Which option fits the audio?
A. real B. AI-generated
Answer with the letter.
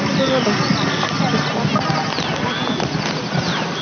A